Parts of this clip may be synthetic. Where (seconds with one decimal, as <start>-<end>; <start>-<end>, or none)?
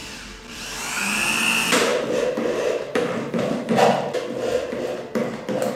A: 0.0-1.9